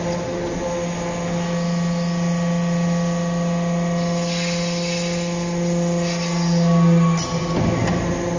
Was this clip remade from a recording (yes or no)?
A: no